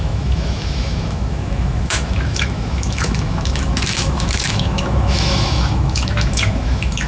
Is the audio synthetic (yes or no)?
yes